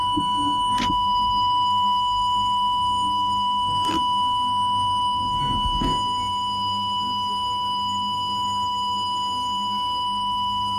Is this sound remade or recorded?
remade